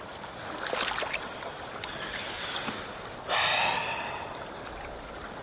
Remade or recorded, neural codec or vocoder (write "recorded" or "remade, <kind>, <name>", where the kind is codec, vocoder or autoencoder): recorded